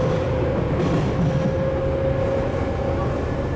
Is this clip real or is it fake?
real